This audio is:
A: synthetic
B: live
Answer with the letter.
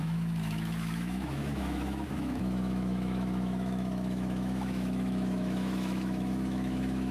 A